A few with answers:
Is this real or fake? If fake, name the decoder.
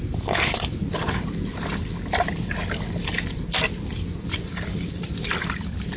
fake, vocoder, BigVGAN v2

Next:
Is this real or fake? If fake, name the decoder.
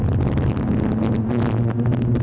real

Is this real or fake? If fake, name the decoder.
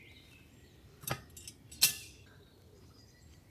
real